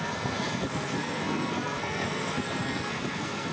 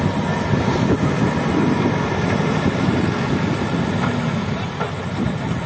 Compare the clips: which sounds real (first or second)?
second